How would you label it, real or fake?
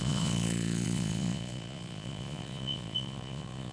fake